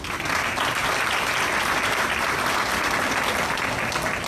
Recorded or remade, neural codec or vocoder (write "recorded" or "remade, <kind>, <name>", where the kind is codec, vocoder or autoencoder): recorded